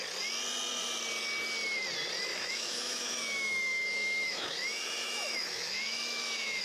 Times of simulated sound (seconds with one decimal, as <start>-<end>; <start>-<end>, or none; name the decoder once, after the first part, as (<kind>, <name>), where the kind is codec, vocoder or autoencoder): 2.3-6.6 (autoencoder, DAC-VAE)